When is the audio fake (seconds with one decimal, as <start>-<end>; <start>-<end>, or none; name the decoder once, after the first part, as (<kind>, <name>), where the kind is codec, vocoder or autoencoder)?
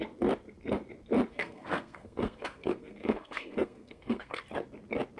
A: 1.3-4.4 (codec, SNAC)